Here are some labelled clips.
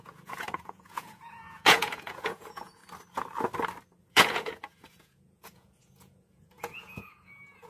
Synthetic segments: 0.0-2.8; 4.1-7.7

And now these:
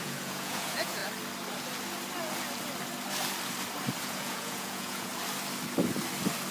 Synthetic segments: 0.0-1.0; 4.0-5.1

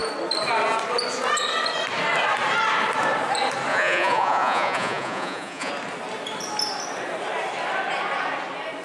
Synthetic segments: 3.7-5.7

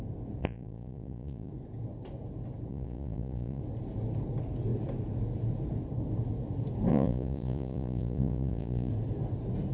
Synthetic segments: 0.4-1.5; 2.7-3.6; 6.9-8.9